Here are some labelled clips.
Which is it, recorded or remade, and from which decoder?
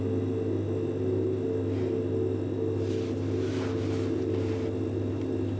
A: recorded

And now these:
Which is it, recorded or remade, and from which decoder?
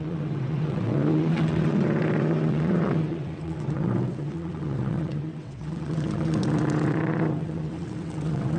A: remade, vocoder, WaveNeXt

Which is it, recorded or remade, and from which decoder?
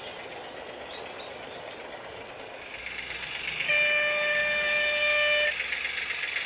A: recorded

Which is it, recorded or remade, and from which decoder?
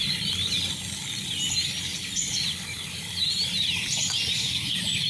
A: recorded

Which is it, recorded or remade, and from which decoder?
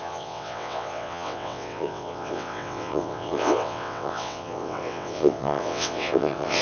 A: remade, vocoder, WaveNeXt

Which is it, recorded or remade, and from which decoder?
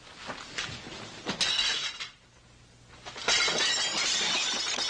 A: recorded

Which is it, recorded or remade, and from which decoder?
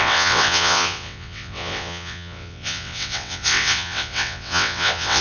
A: remade, vocoder, WaveNeXt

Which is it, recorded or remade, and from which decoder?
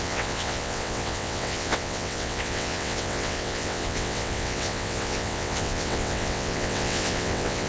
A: remade, vocoder, WaveNeXt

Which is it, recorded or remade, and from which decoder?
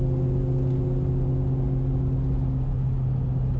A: recorded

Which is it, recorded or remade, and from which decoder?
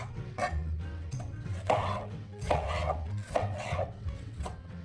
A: remade, vocoder, WaveNeXt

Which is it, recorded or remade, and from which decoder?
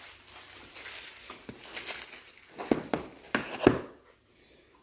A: recorded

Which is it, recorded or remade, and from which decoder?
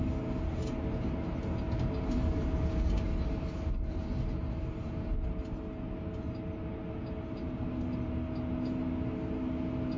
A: recorded